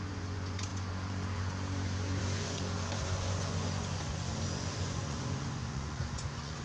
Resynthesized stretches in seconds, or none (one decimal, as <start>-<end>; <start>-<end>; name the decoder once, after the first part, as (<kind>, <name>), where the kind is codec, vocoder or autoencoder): 0.0-6.6 (vocoder, Vocos)

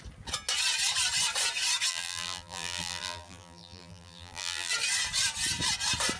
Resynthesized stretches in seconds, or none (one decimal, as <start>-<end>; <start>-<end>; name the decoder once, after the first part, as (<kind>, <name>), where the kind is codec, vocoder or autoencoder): 1.9-4.7 (vocoder, BigVGAN v2)